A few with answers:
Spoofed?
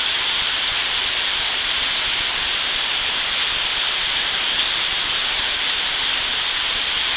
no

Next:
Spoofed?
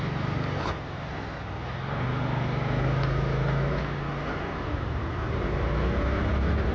no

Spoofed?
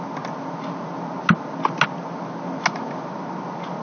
no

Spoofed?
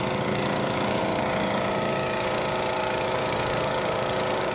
yes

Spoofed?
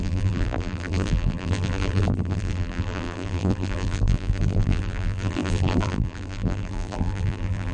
yes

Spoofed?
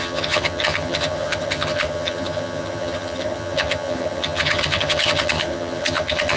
yes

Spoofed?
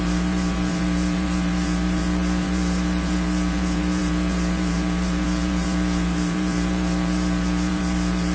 yes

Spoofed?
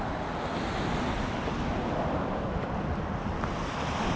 no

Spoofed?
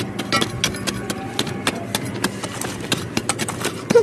no